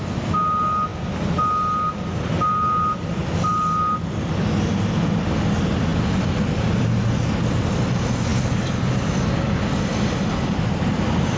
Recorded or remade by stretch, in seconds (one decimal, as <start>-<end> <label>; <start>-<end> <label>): 0.0-11.4 recorded